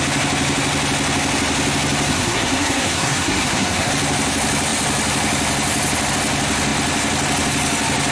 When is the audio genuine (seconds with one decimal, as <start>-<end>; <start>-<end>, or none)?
0.0-2.1; 3.9-8.1